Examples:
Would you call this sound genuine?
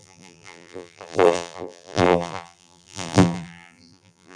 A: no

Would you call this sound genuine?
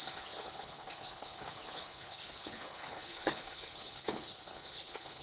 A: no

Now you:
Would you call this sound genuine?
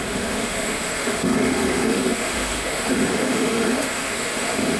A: no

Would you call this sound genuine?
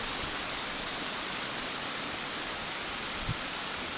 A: no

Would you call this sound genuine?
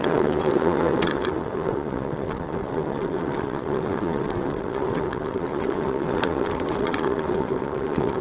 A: no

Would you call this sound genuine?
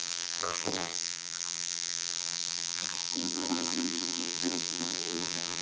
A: no